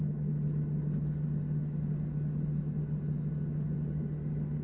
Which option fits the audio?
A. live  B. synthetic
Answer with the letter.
A